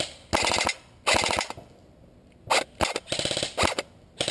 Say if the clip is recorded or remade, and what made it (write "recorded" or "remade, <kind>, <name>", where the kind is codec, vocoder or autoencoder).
recorded